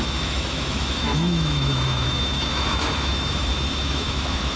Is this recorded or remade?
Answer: remade